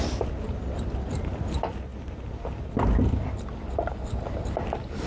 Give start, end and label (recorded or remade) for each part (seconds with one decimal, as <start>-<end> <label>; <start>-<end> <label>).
0.0-5.1 recorded